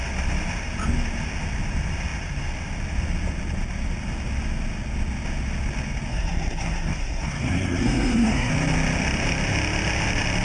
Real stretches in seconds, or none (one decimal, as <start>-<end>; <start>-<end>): 0.0-6.1; 8.5-10.4